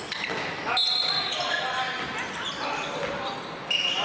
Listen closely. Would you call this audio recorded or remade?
recorded